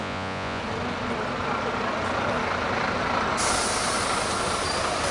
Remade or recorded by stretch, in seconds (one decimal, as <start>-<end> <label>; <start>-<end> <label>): 0.0-0.6 remade; 0.6-5.1 recorded

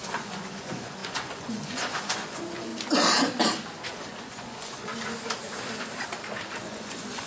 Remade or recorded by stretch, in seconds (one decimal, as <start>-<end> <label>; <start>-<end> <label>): 0.0-2.7 remade; 2.7-3.9 recorded; 3.9-4.9 remade; 4.9-6.6 recorded; 6.6-7.3 remade